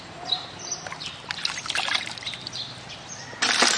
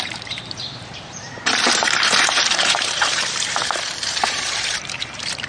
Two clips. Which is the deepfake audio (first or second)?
second